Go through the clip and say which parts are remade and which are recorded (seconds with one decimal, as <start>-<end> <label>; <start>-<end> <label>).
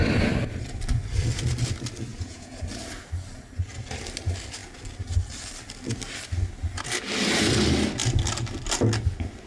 0.0-2.1 recorded; 2.1-2.6 remade; 2.6-9.5 recorded